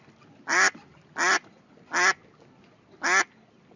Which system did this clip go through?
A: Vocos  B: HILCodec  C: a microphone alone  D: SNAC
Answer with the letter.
C